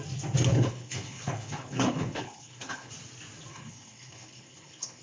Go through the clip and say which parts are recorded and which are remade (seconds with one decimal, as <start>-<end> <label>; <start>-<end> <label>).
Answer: 0.0-0.5 recorded; 0.5-2.9 remade; 2.9-3.5 recorded; 3.5-5.0 remade